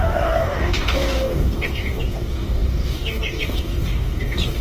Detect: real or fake fake